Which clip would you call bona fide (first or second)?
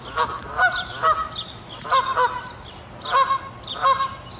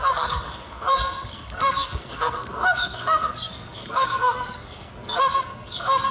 first